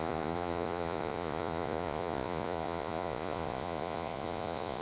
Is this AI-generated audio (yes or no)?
yes